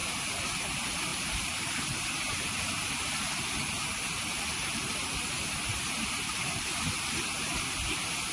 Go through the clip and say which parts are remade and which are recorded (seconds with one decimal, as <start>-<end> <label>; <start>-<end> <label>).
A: 0.0-1.1 recorded; 1.1-4.9 remade; 4.9-5.7 recorded; 5.7-7.2 remade; 7.2-8.3 recorded